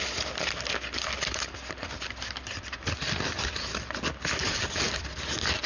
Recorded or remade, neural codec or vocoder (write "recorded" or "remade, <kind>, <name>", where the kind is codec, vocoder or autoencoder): recorded